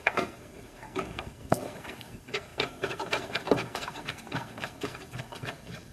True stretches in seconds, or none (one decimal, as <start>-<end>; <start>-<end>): none